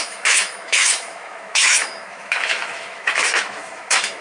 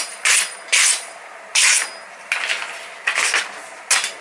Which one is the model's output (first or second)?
first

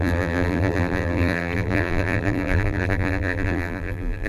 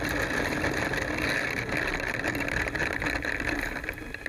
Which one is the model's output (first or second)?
first